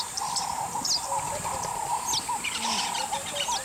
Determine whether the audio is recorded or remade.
recorded